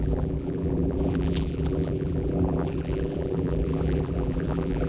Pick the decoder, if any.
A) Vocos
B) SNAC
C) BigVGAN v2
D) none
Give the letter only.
C